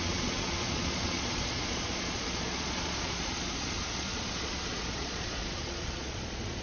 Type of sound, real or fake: fake